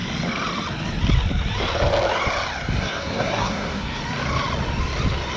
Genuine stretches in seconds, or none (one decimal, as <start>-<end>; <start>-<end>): 0.0-2.8; 4.0-5.4